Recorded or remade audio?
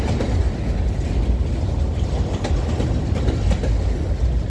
recorded